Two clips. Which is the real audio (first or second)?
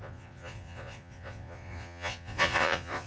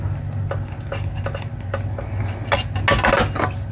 second